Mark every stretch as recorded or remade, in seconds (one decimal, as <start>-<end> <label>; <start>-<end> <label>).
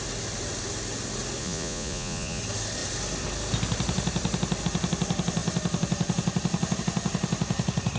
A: 0.0-1.4 recorded; 1.4-2.4 remade; 2.4-8.0 recorded